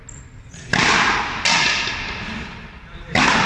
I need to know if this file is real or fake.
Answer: real